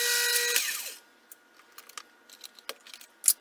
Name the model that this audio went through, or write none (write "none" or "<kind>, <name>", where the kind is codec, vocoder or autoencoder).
none